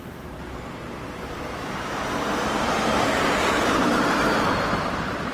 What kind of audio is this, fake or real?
fake